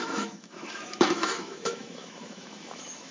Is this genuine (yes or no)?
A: no